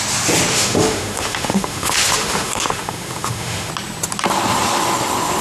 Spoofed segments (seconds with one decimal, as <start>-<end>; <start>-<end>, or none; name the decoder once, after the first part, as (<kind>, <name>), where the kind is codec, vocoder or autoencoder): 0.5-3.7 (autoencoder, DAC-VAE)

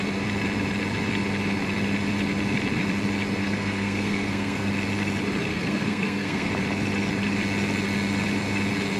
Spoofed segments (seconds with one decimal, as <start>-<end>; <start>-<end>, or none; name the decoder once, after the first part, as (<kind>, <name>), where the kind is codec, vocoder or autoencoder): 3.4-4.7 (codec, SNAC); 5.5-6.5

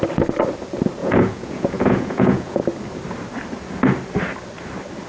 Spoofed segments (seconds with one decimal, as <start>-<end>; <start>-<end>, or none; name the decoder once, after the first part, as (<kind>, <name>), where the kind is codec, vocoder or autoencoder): 1.0-2.6 (vocoder, Vocos)

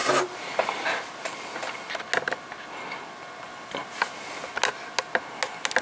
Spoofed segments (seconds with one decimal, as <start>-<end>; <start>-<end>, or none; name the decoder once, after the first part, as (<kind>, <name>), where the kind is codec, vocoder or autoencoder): none

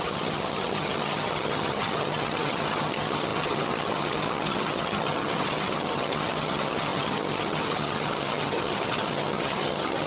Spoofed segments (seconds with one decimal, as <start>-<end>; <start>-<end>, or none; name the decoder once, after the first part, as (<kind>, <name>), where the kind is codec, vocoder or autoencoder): 0.0-10.1 (vocoder, HiFi-GAN)

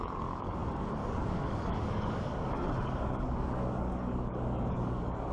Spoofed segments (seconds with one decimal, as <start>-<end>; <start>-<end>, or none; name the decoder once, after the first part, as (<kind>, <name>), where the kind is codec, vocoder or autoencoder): 0.0-5.3 (codec, DAC)